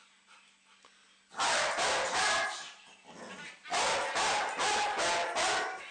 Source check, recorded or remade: recorded